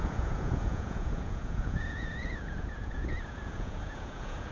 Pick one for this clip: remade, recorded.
remade